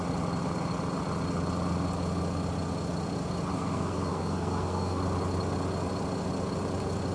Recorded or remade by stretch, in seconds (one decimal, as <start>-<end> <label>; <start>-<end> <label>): 0.0-3.5 recorded; 3.5-5.0 remade; 5.0-7.1 recorded